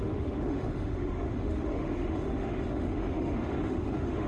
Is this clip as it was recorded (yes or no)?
no